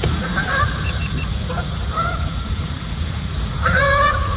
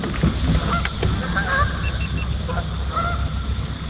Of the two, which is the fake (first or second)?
first